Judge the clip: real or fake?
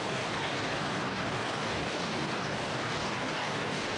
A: fake